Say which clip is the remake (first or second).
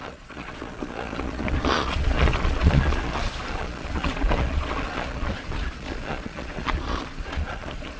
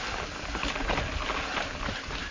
first